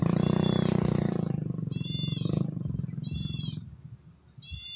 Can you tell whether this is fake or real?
real